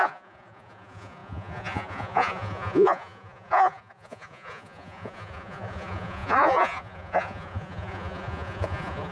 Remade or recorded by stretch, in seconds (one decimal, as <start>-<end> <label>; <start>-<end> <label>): 0.0-9.1 remade